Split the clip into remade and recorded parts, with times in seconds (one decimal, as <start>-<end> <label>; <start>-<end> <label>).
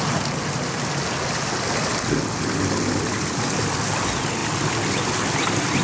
0.0-4.4 recorded; 4.4-5.8 remade